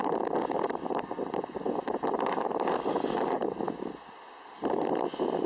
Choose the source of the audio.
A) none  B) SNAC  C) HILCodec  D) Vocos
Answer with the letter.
A